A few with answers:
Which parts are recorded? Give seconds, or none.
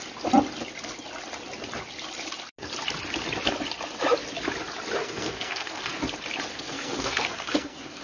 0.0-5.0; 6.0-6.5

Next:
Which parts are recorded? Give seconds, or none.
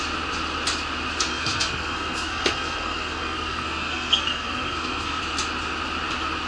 0.0-1.3; 5.2-6.5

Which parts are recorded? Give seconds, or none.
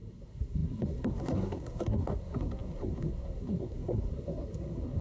none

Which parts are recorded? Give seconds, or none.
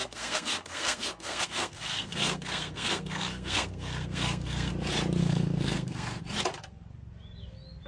4.7-5.2; 6.2-7.9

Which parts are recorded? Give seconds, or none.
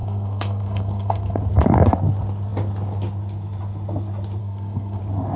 1.4-4.4; 5.0-5.4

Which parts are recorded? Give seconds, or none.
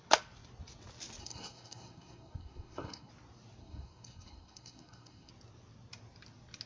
0.0-1.2; 3.1-3.6; 5.3-6.7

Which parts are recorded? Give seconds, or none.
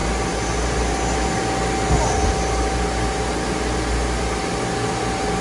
0.0-5.4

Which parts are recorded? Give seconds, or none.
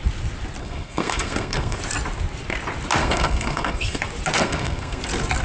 0.0-0.6; 1.8-3.0; 4.0-4.4; 5.0-5.4